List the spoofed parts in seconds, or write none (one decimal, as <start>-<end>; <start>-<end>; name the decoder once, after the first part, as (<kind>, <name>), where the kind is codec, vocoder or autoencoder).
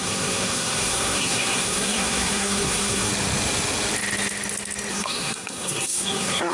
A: 0.0-3.1 (codec, SNAC); 4.9-6.5